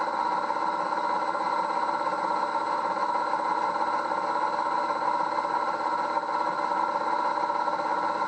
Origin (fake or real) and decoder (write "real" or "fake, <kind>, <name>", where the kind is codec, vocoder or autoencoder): real